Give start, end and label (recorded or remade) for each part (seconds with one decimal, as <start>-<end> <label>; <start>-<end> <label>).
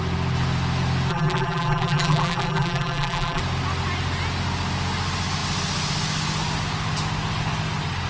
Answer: 0.0-1.1 recorded; 1.1-3.4 remade; 3.4-8.1 recorded